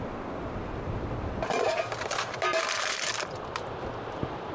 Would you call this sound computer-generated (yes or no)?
yes